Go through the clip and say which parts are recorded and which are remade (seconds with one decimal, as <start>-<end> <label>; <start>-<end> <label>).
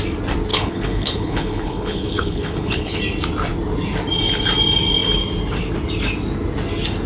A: 0.0-0.5 recorded; 0.5-3.0 remade; 3.0-7.1 recorded